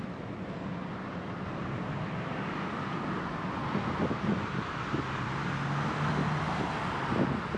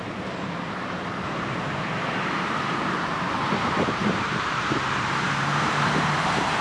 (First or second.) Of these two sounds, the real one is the first